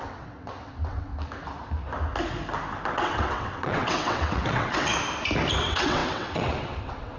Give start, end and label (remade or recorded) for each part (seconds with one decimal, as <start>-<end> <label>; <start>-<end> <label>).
0.0-1.1 remade; 1.1-2.9 recorded; 2.9-4.9 remade; 4.9-5.6 recorded; 5.6-7.2 remade